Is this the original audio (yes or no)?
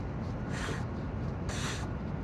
yes